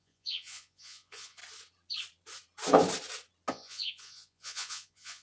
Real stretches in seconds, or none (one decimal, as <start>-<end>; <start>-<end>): 1.4-3.5